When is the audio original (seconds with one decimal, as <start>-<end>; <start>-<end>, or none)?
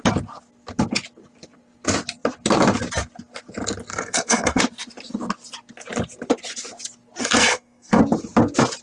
0.0-3.9; 4.6-7.2; 8.0-8.8